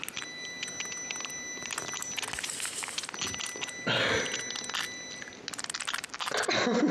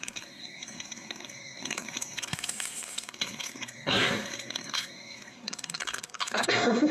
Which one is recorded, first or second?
first